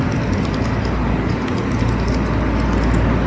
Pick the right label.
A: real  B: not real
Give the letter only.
A